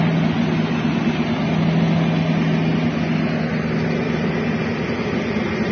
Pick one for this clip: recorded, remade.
recorded